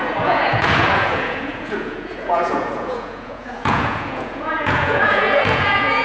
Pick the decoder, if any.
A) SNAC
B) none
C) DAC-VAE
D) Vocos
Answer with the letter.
D